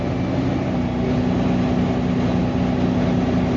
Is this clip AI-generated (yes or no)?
no